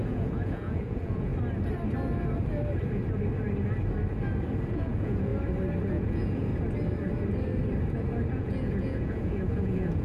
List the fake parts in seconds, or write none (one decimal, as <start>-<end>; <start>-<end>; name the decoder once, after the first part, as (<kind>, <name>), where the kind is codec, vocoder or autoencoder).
0.0-1.3 (vocoder, Vocos); 4.7-5.3; 5.9-6.5; 8.3-10.0